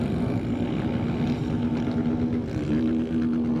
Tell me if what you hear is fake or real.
real